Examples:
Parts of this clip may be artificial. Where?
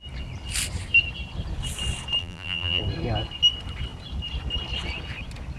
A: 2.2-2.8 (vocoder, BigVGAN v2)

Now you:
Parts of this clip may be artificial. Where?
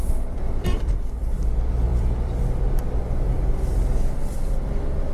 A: 0.0-1.4 (vocoder, BigVGAN v2); 1.9-2.6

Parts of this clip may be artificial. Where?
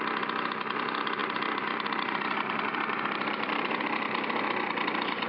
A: 1.2-4.4 (vocoder, BigVGAN v2)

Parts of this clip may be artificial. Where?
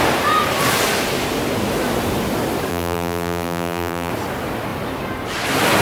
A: 2.7-4.1 (vocoder, BigVGAN v2)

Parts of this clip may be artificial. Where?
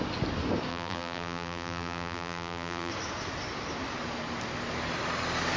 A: 0.7-2.9 (vocoder, BigVGAN v2)